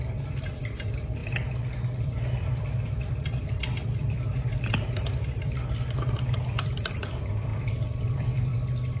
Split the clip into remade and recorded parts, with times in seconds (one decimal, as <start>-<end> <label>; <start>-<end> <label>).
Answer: 0.0-1.2 remade; 1.2-2.0 recorded; 2.0-7.5 remade; 7.5-8.1 recorded; 8.1-9.0 remade